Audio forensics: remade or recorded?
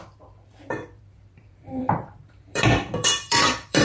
remade